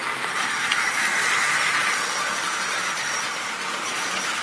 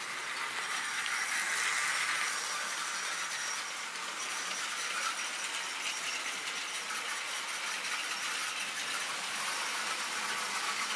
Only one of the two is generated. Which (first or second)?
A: first